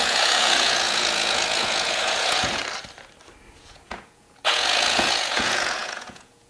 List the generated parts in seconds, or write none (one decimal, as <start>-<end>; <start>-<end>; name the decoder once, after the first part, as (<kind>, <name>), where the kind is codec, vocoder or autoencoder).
0.0-2.6 (vocoder, Vocos); 3.6-6.5